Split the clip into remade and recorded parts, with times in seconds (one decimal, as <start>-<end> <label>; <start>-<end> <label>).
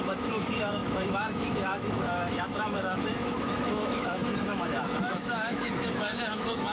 0.0-6.7 remade